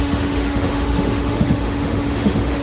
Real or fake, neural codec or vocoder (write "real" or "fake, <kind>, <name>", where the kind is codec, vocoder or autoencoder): fake, autoencoder, DAC-VAE